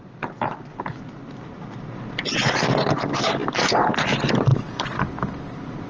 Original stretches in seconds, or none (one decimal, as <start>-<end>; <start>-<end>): 1.2-2.9